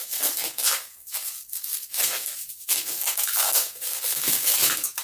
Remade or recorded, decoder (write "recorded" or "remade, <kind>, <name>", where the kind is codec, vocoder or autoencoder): remade, codec, SNAC